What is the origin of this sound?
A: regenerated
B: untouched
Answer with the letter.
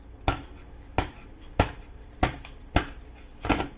B